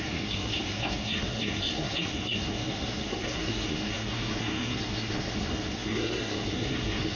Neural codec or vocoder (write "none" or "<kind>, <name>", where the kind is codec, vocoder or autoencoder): codec, SNAC